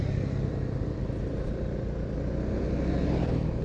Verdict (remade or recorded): recorded